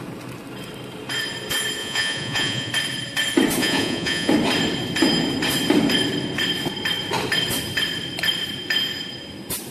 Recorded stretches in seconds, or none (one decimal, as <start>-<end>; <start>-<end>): 0.0-1.8; 2.7-3.6; 4.3-9.7